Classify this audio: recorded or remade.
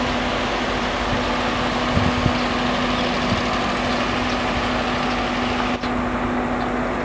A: recorded